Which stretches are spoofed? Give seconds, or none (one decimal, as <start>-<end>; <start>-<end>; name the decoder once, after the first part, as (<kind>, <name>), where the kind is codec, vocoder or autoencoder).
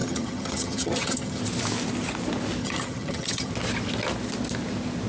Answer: 0.0-1.4 (vocoder, HiFi-GAN); 2.6-3.5